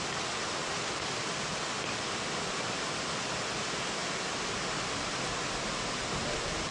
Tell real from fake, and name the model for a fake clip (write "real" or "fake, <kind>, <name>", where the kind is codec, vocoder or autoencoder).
real